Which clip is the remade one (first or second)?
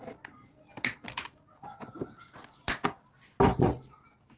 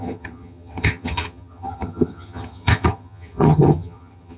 second